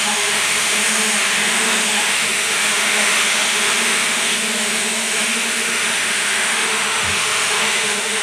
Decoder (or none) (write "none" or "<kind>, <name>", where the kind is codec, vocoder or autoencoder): autoencoder, DAC-VAE